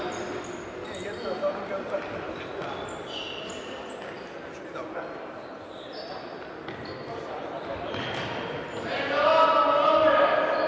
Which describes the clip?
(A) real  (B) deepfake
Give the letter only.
A